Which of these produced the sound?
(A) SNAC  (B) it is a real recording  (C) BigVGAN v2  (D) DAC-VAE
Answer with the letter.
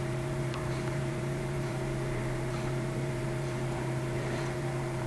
C